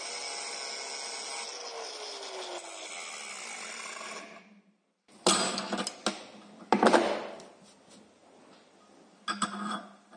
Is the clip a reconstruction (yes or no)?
no